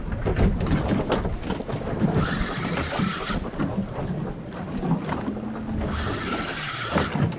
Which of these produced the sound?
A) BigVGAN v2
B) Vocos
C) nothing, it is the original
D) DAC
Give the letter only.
C